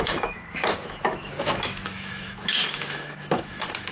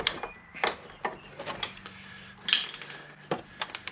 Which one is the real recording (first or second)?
second